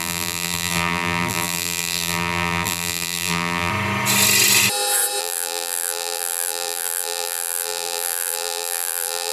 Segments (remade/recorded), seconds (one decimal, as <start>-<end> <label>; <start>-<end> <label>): 0.0-3.7 remade; 3.7-5.2 recorded; 5.2-9.3 remade